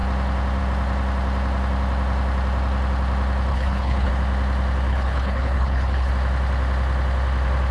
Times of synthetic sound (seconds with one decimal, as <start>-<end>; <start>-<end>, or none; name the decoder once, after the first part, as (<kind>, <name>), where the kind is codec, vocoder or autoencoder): 3.5-4.1 (codec, HILCodec); 4.9-6.1